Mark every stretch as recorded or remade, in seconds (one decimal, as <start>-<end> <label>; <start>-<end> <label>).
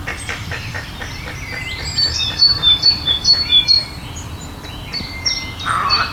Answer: 0.0-3.7 remade; 3.7-6.1 recorded